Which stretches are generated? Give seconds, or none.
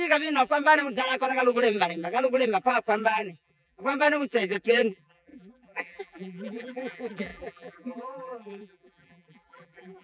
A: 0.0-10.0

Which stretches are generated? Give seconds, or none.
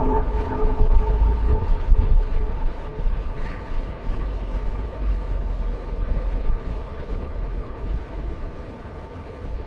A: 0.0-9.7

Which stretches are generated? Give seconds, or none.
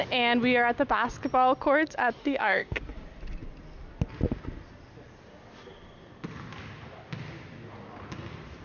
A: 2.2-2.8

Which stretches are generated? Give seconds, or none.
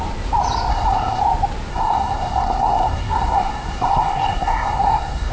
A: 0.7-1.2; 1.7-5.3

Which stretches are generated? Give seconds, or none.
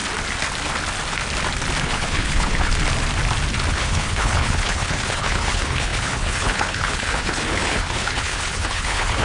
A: 1.8-2.7; 3.7-9.2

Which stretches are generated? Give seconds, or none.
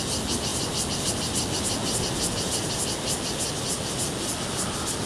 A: none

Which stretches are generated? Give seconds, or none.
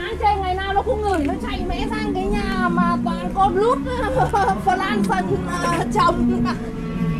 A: 1.1-1.9